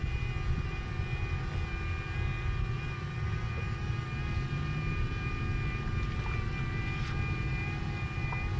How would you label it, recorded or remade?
recorded